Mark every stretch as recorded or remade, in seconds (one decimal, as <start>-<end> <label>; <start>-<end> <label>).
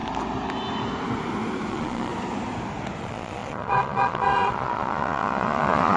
0.0-1.7 recorded; 1.7-2.1 remade; 2.1-3.0 recorded; 3.0-6.0 remade